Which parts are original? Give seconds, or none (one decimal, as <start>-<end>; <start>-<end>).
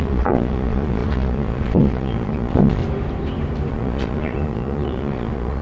2.8-3.7